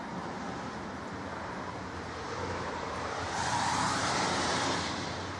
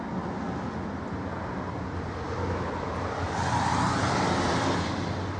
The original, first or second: second